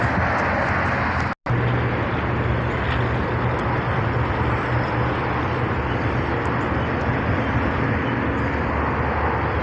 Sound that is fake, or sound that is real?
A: real